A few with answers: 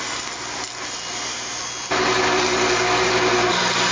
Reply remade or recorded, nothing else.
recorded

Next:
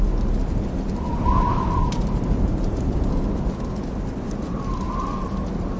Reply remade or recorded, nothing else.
recorded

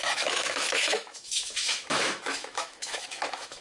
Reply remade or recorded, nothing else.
remade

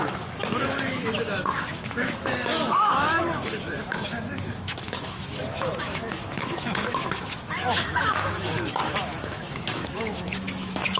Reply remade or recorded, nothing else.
remade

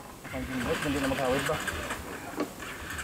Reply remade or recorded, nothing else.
recorded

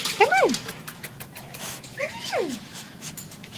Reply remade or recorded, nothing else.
remade